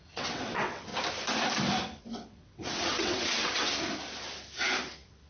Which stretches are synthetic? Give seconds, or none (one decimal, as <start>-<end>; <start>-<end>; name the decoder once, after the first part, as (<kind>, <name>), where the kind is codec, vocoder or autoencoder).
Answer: 0.0-0.9 (vocoder, WaveNeXt); 2.0-3.7